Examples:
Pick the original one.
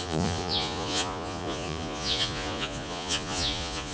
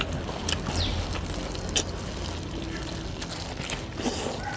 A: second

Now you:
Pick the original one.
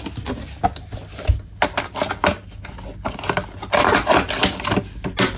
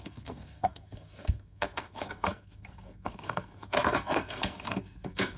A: first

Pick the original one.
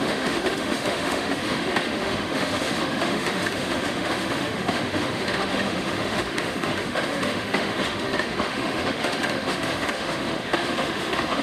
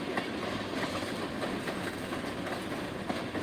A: second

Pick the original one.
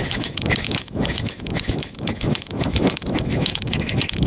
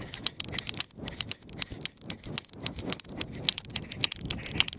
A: second